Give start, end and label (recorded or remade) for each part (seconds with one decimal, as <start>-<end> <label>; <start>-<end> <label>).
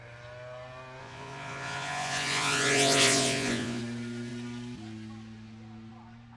0.0-1.0 recorded; 1.0-3.8 remade; 3.8-6.4 recorded